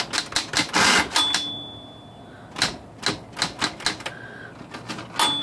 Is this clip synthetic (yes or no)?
no